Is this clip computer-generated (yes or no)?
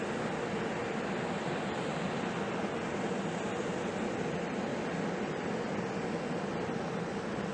no